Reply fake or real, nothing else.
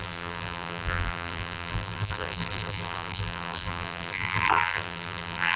fake